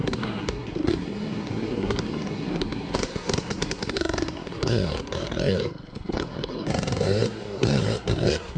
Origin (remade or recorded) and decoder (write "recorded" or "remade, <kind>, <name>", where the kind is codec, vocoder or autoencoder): remade, codec, SNAC